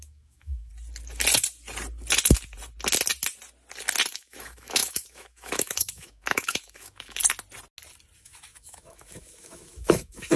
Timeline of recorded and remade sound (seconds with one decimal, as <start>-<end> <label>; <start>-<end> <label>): 0.0-0.7 remade; 0.7-4.1 recorded; 4.1-7.2 remade; 7.2-8.2 recorded; 8.2-10.4 remade